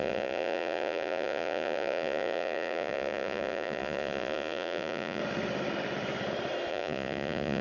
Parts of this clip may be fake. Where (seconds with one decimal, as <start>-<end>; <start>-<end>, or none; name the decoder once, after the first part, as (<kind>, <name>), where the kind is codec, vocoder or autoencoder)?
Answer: 0.0-5.2 (vocoder, Vocos); 6.7-7.6